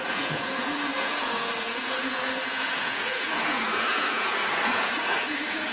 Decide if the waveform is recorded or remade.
remade